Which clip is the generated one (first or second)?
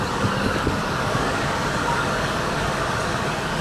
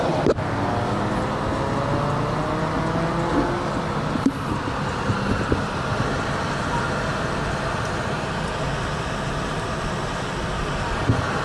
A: first